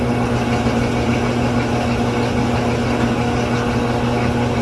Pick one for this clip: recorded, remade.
recorded